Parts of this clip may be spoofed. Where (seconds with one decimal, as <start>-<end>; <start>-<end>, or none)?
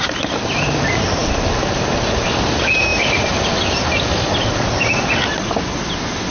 none